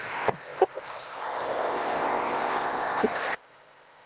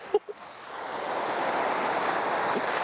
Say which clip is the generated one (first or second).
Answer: first